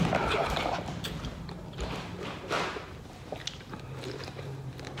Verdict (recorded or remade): remade